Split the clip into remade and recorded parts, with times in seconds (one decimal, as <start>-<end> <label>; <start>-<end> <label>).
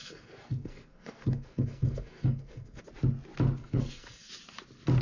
0.0-2.8 remade; 2.8-3.6 recorded; 3.6-4.3 remade; 4.3-5.0 recorded